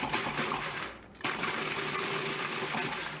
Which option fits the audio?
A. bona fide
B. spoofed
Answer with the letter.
A